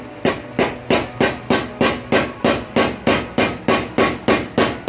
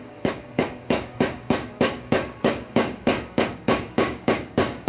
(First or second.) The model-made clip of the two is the second